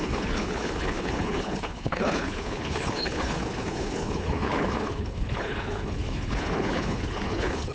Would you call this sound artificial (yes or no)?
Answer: yes